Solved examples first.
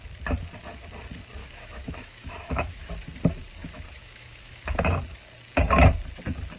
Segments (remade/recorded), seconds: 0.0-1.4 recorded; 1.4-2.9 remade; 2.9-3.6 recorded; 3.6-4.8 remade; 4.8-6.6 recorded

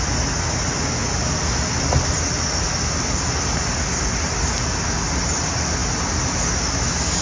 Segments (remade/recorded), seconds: 0.0-7.2 recorded

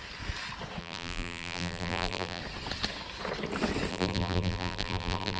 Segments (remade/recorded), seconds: 0.0-0.8 recorded; 0.8-2.4 remade; 2.4-3.9 recorded; 3.9-5.4 remade

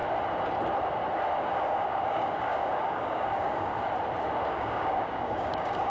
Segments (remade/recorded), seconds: 0.0-1.4 recorded; 1.4-3.7 remade; 3.7-4.5 recorded; 4.5-5.9 remade

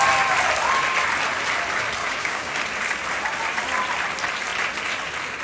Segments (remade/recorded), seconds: 0.0-2.0 recorded; 2.0-2.5 remade; 2.5-5.4 recorded

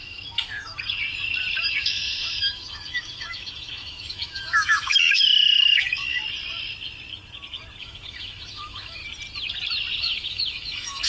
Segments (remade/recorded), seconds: 0.0-0.7 remade; 0.7-1.6 recorded; 1.6-6.2 remade; 6.2-7.8 recorded; 7.8-9.0 remade; 9.0-10.0 recorded; 10.0-11.1 remade